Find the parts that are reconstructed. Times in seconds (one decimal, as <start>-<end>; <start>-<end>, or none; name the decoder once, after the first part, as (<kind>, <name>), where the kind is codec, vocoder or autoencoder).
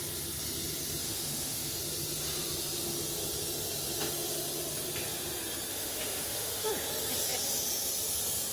1.0-1.8 (autoencoder, DAC-VAE); 5.7-6.7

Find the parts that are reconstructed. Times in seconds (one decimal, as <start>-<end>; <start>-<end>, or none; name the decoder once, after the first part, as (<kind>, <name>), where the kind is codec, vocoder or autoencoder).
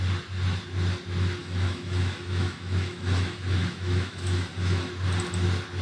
1.4-4.9 (autoencoder, DAC-VAE)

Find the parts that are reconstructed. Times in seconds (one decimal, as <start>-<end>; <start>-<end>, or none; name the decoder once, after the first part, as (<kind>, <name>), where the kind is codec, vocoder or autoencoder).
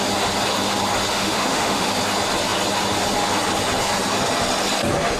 1.1-1.9 (autoencoder, DAC-VAE)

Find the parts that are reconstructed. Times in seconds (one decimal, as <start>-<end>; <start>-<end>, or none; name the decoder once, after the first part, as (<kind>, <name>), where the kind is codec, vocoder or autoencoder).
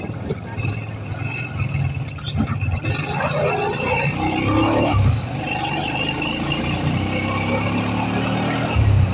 4.6-5.2 (autoencoder, DAC-VAE)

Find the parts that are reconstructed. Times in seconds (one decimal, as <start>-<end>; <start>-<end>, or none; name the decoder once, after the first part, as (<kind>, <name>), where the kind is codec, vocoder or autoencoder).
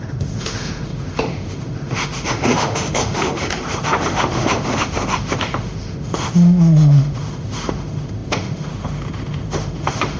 0.0-10.2 (autoencoder, DAC-VAE)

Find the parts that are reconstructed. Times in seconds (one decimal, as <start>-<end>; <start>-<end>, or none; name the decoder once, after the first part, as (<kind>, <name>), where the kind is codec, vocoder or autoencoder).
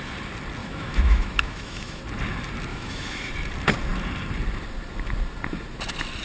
0.6-2.0 (autoencoder, DAC-VAE); 2.7-3.3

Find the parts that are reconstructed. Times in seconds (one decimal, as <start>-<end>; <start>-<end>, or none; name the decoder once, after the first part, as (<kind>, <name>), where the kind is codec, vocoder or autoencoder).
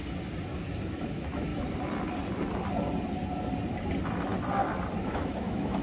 0.9-1.5 (autoencoder, DAC-VAE); 5.0-5.8